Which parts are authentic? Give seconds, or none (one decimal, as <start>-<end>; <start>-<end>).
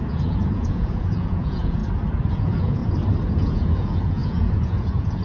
1.8-2.3; 2.8-3.3